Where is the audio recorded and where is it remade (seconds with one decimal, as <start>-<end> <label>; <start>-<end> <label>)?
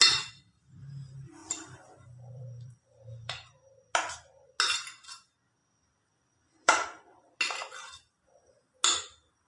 0.0-1.4 recorded; 1.4-3.8 remade; 3.8-5.6 recorded; 5.6-7.4 remade; 7.4-9.5 recorded